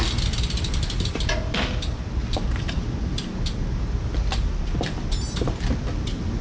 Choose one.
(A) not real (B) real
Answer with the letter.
B